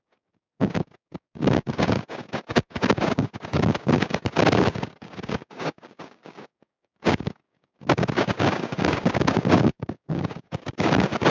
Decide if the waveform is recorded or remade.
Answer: remade